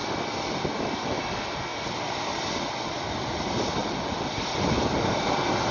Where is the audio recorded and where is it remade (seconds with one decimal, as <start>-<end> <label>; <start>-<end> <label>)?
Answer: 0.0-1.7 recorded; 1.7-2.4 remade; 2.4-5.7 recorded